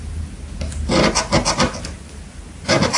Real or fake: real